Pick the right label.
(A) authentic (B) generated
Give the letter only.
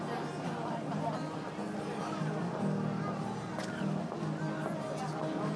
A